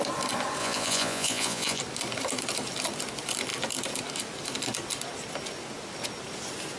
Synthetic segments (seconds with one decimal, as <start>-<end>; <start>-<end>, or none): 0.6-1.8